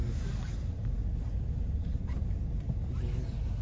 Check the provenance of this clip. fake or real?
real